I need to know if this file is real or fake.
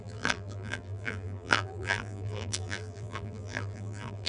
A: fake